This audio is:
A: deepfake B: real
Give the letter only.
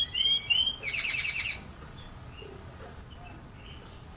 B